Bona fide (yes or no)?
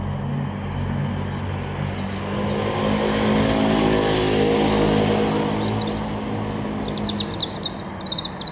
yes